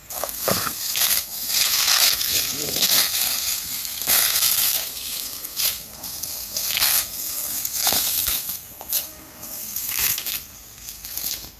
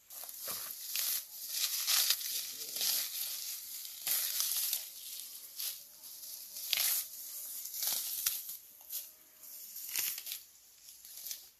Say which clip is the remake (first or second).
first